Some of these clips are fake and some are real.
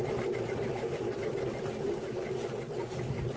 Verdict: real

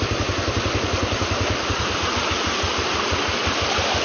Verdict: real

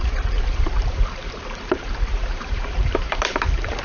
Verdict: fake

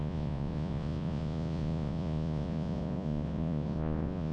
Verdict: fake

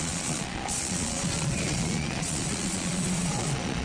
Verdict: fake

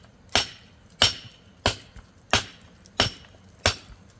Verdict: real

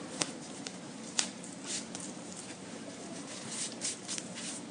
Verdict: fake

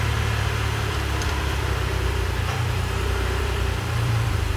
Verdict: fake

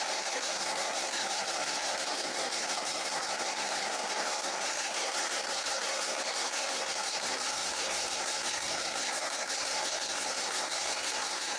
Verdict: fake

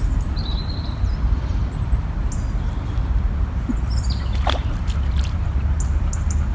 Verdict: fake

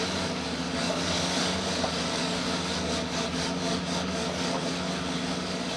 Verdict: fake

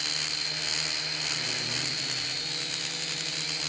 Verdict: real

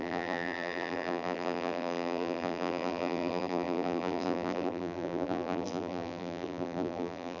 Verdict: fake